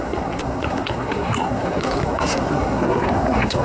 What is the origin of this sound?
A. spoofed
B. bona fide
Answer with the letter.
A